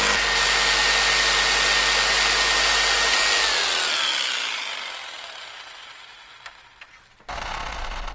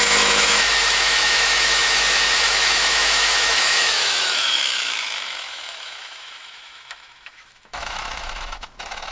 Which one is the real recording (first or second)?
first